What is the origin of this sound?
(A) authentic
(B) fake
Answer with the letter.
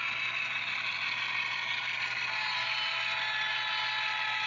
A